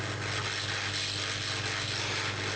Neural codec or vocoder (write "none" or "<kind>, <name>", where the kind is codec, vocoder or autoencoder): none